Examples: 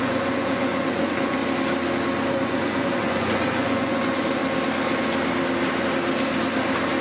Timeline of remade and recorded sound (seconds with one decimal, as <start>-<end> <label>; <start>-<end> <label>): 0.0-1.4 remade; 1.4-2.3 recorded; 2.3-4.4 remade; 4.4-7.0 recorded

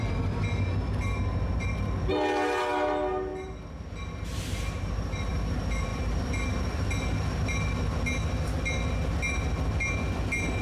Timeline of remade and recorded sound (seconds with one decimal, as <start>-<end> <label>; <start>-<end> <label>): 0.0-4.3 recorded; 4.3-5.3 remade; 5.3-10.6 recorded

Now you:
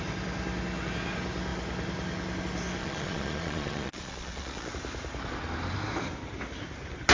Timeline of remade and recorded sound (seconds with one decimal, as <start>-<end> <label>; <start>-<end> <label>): 0.0-2.8 recorded; 2.8-4.7 remade; 4.7-7.1 recorded

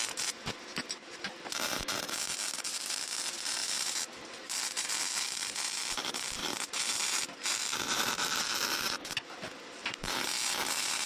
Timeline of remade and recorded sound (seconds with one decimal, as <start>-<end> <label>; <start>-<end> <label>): 0.0-6.4 recorded; 6.4-8.4 remade; 8.4-11.1 recorded

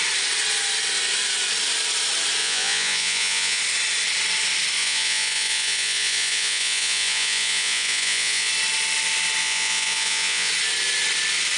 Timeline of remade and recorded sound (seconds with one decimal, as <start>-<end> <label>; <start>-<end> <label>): 0.0-2.4 recorded; 2.4-3.6 remade; 3.6-4.8 recorded; 4.8-8.5 remade; 8.5-9.4 recorded; 9.4-10.5 remade; 10.5-11.6 recorded

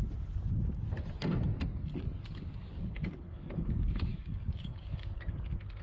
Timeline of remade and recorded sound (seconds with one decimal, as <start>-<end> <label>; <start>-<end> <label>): 0.0-1.7 recorded; 1.7-5.2 remade; 5.2-5.8 recorded

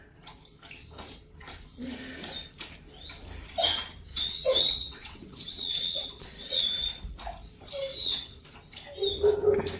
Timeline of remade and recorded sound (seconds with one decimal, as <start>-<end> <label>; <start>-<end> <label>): 0.0-4.1 recorded; 4.1-6.6 remade; 6.6-7.9 recorded; 7.9-8.4 remade; 8.4-9.8 recorded